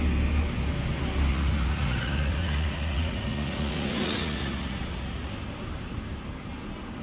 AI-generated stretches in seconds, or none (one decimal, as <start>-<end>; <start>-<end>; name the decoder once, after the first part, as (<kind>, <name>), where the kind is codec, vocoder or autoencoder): 1.3-5.3 (vocoder, Vocos)